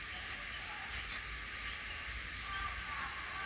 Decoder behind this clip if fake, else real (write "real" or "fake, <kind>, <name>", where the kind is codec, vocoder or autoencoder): real